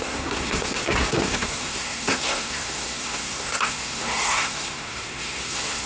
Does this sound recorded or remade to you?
remade